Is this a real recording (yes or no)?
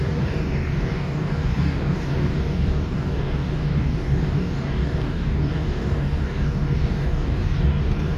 no